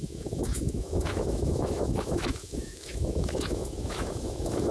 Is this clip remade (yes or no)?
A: yes